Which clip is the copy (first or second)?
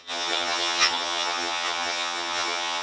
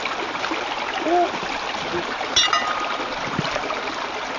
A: first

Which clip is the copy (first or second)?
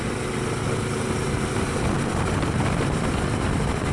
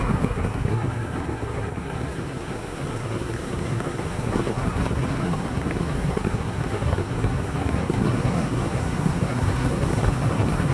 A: second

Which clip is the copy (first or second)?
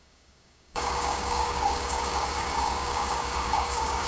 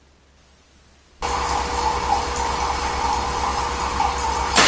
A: first